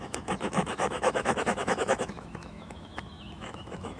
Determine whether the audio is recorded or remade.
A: remade